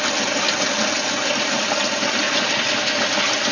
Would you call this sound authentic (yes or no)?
yes